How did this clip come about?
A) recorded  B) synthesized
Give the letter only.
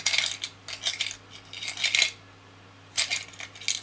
A